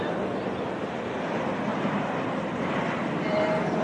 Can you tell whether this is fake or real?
fake